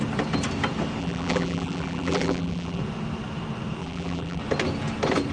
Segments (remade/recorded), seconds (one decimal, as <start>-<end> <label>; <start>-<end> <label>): 0.0-1.0 recorded; 1.0-2.8 remade; 2.8-3.8 recorded; 3.8-4.4 remade; 4.4-5.3 recorded